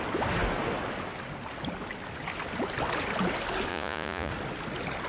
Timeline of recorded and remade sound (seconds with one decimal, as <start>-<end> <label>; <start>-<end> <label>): 0.0-3.7 recorded; 3.7-4.3 remade; 4.3-5.1 recorded